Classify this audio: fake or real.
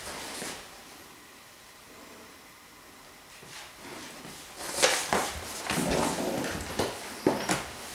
real